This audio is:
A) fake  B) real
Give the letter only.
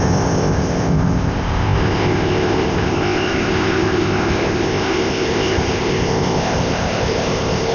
A